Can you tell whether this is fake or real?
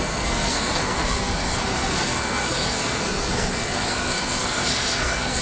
fake